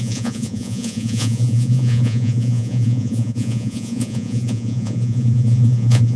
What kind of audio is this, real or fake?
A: fake